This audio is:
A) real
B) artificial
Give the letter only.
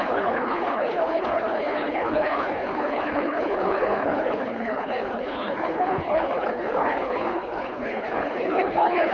B